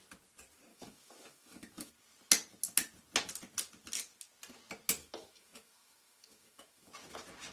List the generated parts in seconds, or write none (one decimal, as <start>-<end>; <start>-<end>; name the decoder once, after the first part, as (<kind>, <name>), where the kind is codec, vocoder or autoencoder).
0.7-1.9 (autoencoder, DAC-VAE); 5.0-6.9